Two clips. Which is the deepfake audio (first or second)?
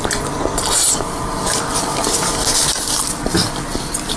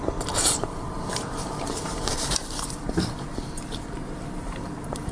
second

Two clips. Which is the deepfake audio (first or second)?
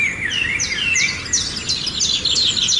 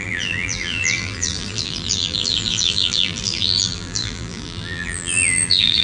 second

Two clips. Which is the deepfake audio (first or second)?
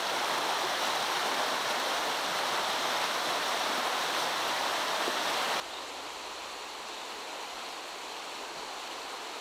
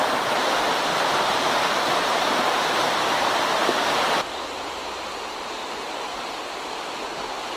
second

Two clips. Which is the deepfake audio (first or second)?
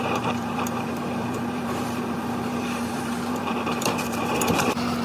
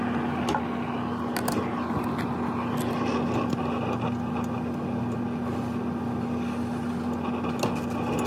first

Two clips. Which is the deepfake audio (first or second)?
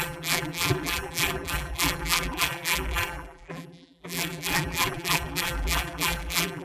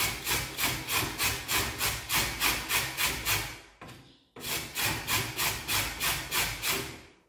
first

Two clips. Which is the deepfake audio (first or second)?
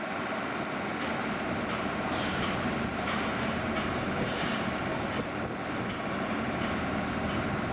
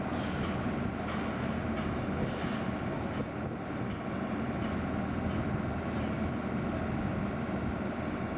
first